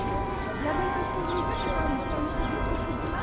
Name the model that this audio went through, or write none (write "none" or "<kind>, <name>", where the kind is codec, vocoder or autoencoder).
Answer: vocoder, BigVGAN v2